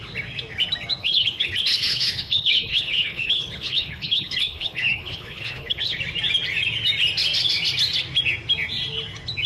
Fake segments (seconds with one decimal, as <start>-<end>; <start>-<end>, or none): 1.0-6.0